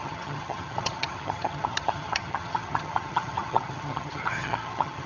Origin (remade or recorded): remade